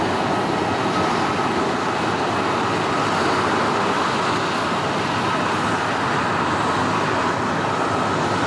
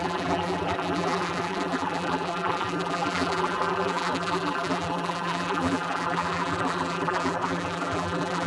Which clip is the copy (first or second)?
second